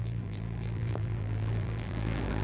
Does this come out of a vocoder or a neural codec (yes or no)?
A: yes